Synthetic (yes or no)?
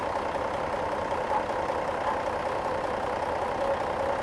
yes